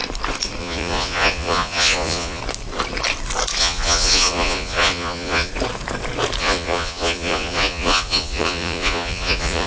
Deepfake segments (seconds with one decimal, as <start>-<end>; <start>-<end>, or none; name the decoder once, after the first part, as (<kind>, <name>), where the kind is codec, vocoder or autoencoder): 0.6-2.4 (vocoder, Vocos); 3.6-5.5; 6.4-9.7

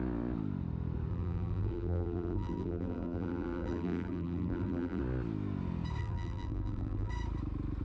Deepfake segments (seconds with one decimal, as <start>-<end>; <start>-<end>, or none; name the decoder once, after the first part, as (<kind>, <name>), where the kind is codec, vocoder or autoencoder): 1.1-5.0 (vocoder, BigVGAN v2); 6.0-7.1

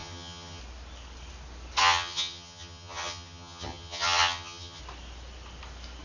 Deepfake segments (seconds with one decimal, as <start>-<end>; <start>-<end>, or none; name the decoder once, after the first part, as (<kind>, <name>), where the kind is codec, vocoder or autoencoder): 0.0-0.6 (vocoder, HiFi-GAN); 1.8-4.8

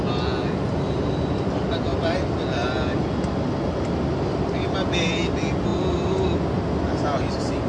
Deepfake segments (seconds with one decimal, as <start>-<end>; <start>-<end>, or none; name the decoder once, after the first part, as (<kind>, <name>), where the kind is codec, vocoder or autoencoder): none